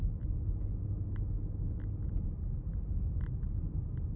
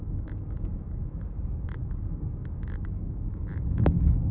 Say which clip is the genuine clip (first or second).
first